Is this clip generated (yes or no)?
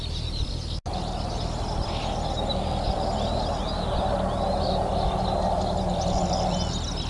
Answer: no